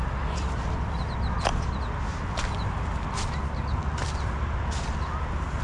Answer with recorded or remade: recorded